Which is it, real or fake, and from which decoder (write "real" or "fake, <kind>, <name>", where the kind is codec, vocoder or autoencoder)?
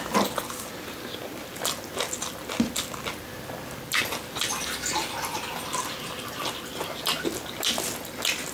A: real